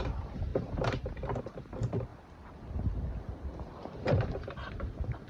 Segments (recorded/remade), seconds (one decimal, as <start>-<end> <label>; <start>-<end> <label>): 0.0-0.5 remade; 0.5-1.4 recorded; 1.4-2.1 remade; 2.1-4.4 recorded; 4.4-5.3 remade